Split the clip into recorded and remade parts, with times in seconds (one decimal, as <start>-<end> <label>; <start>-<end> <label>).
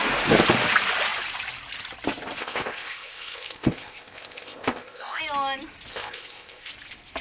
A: 0.0-2.4 recorded; 2.4-5.2 remade; 5.2-5.9 recorded; 5.9-6.7 remade; 6.7-7.2 recorded